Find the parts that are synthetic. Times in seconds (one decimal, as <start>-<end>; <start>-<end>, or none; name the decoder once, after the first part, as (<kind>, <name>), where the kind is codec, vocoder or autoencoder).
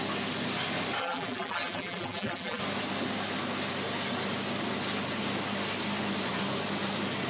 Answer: 1.0-2.6 (vocoder, BigVGAN v2)